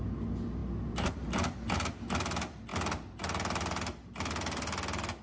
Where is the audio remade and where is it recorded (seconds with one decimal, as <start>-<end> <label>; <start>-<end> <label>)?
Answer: 0.0-5.2 recorded